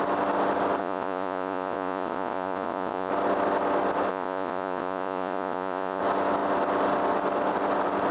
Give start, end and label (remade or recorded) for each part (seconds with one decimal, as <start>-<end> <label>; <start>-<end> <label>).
0.0-0.8 recorded; 0.8-3.1 remade; 3.1-4.1 recorded; 4.1-6.0 remade; 6.0-8.1 recorded